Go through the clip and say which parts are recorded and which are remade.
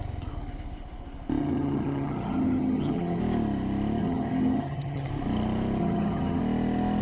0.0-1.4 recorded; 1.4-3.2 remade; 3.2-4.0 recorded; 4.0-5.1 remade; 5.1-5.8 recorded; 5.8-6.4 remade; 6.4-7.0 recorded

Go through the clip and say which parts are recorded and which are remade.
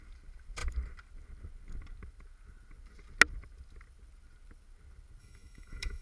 0.0-5.2 recorded; 5.2-6.0 remade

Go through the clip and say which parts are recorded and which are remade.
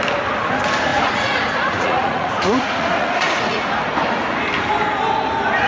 0.0-0.9 recorded; 0.9-3.7 remade; 3.7-5.7 recorded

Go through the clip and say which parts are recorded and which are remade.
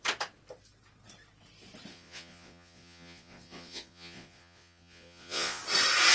0.0-1.9 recorded; 1.9-5.6 remade; 5.6-6.1 recorded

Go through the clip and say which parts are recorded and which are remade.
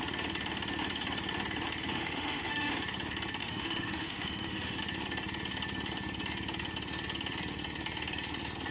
0.0-1.9 recorded; 1.9-2.7 remade; 2.7-3.4 recorded; 3.4-4.8 remade; 4.8-8.7 recorded